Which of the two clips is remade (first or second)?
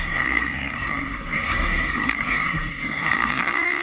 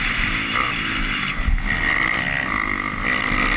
first